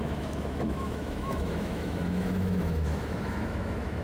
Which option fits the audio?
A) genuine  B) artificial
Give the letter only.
B